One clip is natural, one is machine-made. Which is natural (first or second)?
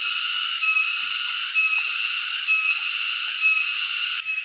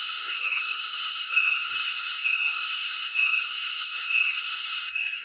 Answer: first